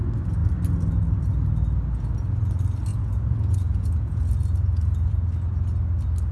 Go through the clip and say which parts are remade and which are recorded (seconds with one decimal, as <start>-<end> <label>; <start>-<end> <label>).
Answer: 0.0-2.9 recorded; 2.9-5.1 remade; 5.1-6.3 recorded